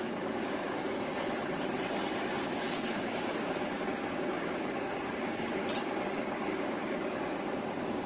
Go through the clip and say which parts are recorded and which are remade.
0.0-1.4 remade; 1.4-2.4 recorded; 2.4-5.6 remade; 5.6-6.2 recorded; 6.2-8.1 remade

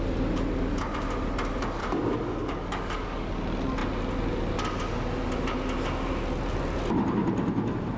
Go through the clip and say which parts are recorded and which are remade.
0.0-1.8 recorded; 1.8-3.3 remade; 3.3-8.0 recorded

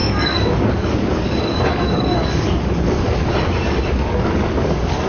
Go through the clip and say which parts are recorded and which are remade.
0.0-3.3 remade; 3.3-3.9 recorded; 3.9-5.1 remade

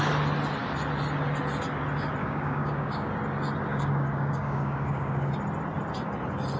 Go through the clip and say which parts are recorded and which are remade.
0.0-2.2 recorded; 2.2-3.1 remade; 3.1-3.7 recorded; 3.7-5.3 remade; 5.3-6.6 recorded